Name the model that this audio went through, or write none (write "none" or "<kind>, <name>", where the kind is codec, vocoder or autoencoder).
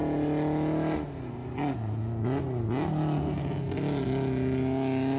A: none